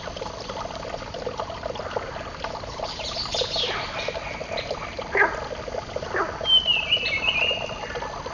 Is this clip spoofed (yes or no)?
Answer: no